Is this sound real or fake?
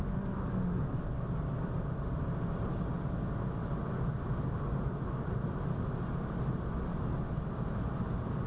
real